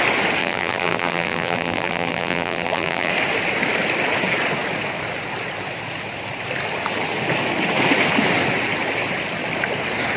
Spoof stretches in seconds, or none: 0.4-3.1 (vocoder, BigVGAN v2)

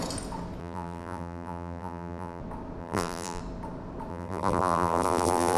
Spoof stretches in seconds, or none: 0.6-2.4 (vocoder, BigVGAN v2); 2.8-3.4; 4.1-5.6

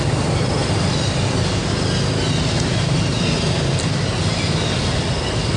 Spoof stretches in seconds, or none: none

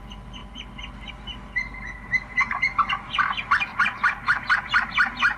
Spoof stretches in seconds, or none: 3.7-4.4 (vocoder, BigVGAN v2)

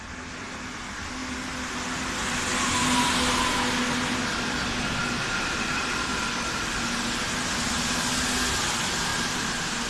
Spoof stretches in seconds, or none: none

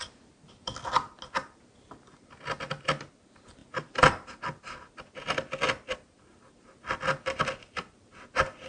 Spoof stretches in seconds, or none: 3.6-4.3 (vocoder, BigVGAN v2)

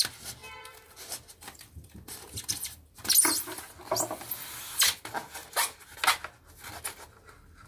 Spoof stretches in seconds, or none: 0.4-2.9 (vocoder, BigVGAN v2)

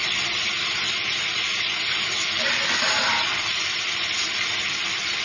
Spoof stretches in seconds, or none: 0.0-5.2 (vocoder, BigVGAN v2)